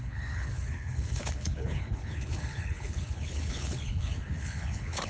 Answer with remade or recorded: remade